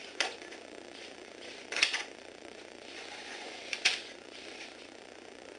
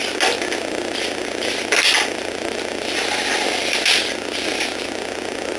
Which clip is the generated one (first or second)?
first